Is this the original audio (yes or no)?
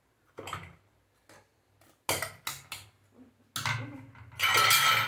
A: yes